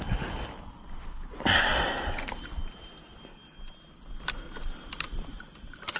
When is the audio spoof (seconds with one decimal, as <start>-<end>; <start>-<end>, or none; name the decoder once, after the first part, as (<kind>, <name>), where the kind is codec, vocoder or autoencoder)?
none